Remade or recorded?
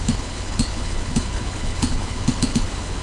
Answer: remade